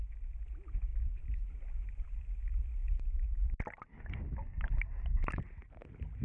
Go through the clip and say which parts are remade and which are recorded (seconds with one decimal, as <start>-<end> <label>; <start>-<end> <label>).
0.0-6.2 recorded

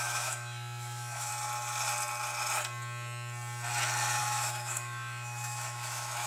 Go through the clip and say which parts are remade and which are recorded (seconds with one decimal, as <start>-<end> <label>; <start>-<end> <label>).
0.0-1.3 remade; 1.3-4.2 recorded; 4.2-6.3 remade